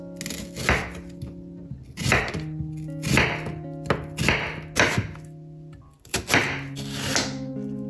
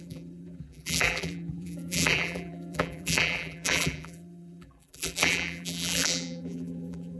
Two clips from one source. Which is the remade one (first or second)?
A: second